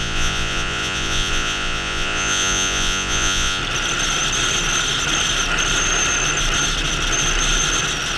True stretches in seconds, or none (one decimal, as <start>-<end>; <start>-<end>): 3.6-8.2